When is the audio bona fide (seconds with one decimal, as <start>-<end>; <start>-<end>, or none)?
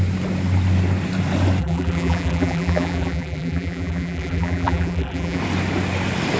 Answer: 0.0-1.6; 5.4-6.4